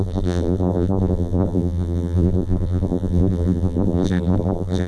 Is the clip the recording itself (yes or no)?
no